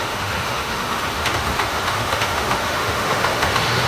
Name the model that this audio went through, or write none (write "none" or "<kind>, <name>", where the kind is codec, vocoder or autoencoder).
autoencoder, DAC-VAE